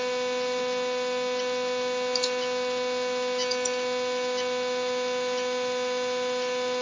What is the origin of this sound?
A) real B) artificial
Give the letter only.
A